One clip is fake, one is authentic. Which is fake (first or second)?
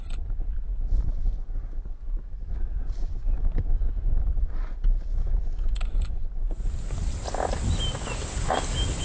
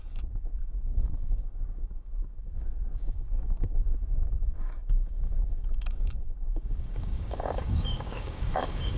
second